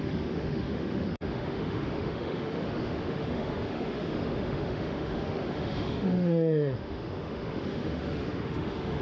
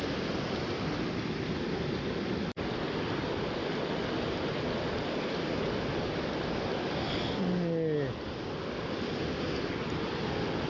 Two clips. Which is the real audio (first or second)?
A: second